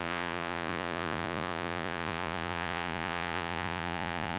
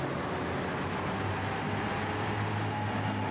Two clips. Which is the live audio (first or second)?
second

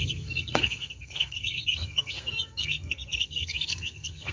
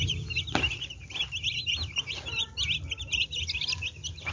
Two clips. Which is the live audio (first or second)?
second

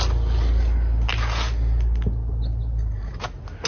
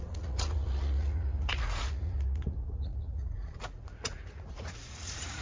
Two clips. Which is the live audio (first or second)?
first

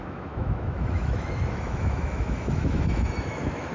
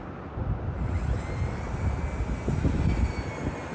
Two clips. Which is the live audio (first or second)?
second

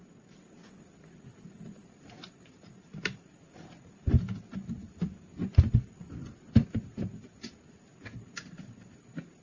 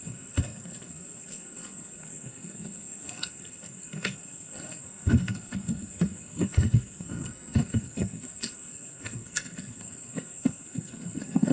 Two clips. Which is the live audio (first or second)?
first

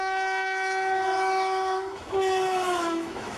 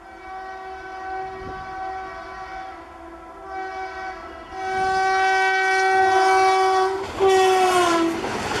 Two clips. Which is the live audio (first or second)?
second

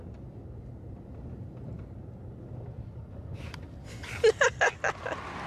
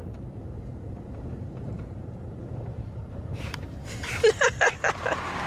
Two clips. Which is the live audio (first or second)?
first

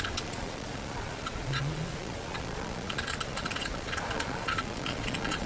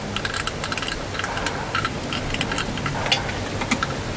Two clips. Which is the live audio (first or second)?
second